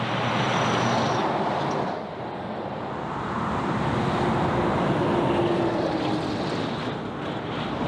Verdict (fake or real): real